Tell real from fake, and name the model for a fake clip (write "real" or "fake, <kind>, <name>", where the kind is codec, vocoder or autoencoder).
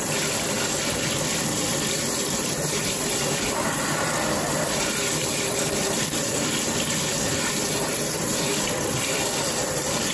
fake, vocoder, BigVGAN v2